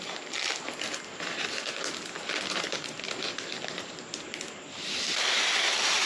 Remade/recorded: recorded